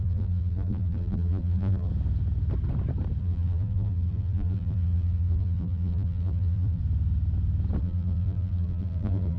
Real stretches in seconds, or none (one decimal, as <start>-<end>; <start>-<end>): 1.9-3.2; 6.8-7.8